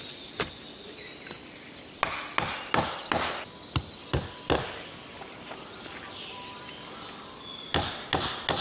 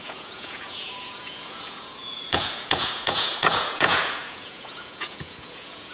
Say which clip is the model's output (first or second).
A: second